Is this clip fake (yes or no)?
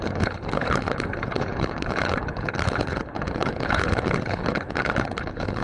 yes